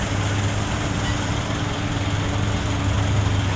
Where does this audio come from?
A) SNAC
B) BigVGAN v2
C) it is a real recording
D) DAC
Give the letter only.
C